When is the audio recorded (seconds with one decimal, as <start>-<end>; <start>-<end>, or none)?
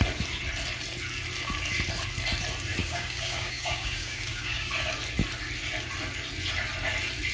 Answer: 0.0-2.8; 4.7-7.3